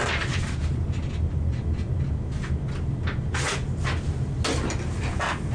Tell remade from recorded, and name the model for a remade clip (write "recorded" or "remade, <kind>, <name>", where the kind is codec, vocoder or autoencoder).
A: recorded